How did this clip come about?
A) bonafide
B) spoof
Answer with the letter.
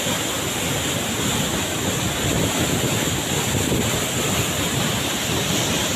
A